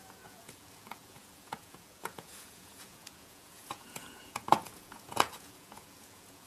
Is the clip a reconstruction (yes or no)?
yes